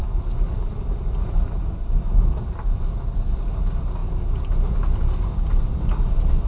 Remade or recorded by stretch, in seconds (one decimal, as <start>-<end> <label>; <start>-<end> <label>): 0.0-6.5 recorded